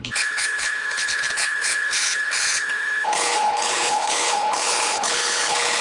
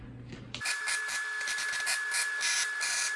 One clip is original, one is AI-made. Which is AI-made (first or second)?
first